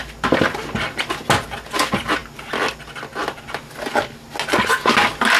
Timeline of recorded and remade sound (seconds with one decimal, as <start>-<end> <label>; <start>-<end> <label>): 0.0-5.4 recorded